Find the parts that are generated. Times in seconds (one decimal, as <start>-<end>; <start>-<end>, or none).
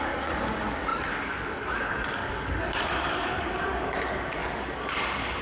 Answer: 0.0-5.4